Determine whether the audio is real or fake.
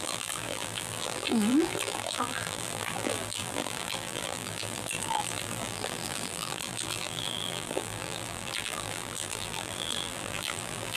fake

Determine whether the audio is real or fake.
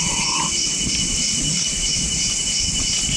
real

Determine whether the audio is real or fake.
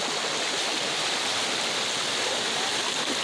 real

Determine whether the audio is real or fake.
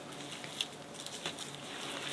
real